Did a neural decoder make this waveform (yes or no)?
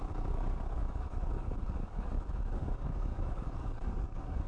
yes